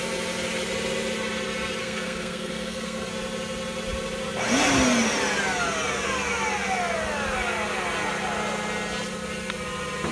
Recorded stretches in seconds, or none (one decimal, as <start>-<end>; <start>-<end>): 0.0-1.8; 3.1-10.1